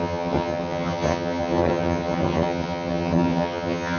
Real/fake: fake